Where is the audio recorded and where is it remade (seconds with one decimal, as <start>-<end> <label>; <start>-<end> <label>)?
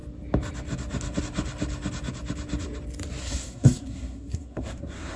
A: 0.0-3.2 recorded; 3.2-5.2 remade